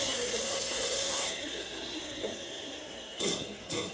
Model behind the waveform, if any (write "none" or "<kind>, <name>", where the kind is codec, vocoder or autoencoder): codec, SNAC